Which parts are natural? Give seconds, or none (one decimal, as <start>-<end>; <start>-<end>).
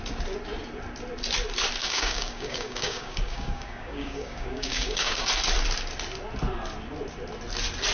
0.0-1.8; 5.3-7.9